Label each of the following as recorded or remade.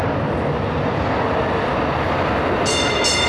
recorded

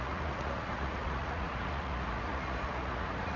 remade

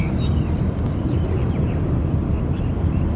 recorded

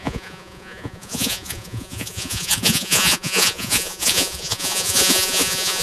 remade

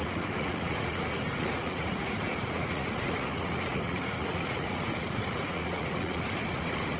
remade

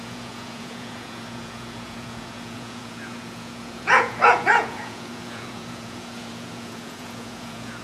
remade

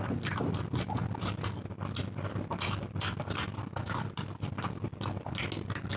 recorded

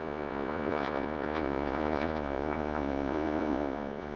remade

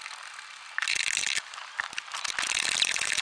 recorded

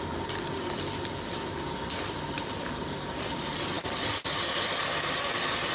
recorded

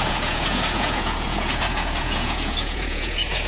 remade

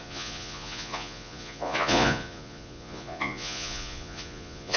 remade